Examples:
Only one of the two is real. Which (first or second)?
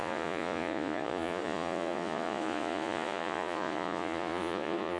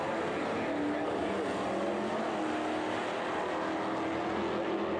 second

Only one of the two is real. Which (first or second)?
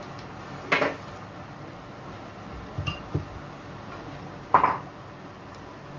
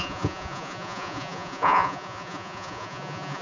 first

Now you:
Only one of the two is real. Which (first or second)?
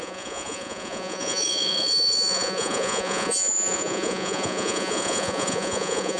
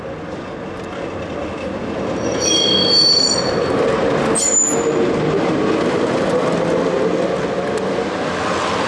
second